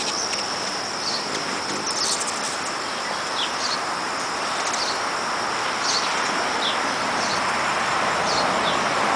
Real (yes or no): yes